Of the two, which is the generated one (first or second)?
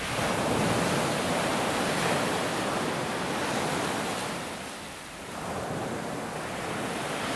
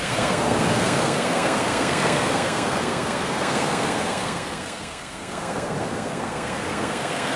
second